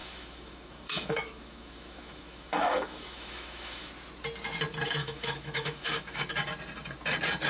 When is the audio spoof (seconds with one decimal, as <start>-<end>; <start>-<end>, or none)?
0.0-3.9; 5.0-6.2